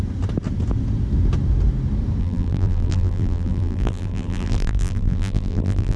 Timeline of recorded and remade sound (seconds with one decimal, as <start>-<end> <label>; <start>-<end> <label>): 0.0-2.2 recorded; 2.2-6.0 remade